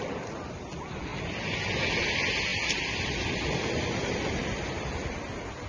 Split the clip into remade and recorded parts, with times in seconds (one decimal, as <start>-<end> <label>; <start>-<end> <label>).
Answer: 0.0-5.7 recorded